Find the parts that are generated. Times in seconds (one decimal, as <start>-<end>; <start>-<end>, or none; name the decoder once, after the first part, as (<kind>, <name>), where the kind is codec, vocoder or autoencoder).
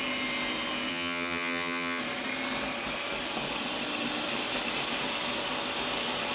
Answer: 0.9-2.0 (vocoder, HiFi-GAN)